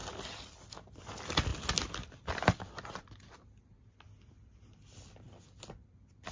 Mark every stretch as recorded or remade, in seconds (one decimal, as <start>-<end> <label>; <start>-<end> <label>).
0.0-6.3 recorded